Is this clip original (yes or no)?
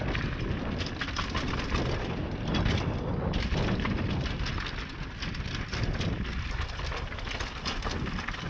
yes